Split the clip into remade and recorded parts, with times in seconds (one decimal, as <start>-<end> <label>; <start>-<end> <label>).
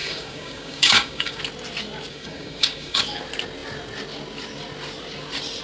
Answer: 0.0-1.4 remade; 1.4-2.1 recorded; 2.1-3.0 remade; 3.0-5.6 recorded